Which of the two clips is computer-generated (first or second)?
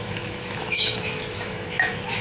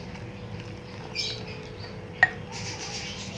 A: first